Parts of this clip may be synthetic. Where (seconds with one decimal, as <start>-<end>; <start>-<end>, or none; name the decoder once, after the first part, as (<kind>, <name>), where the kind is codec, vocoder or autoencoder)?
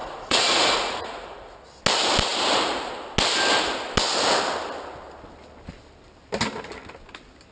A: 0.0-1.6 (vocoder, Vocos)